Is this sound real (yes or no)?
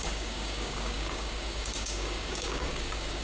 no